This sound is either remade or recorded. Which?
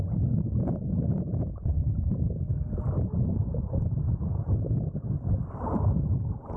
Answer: recorded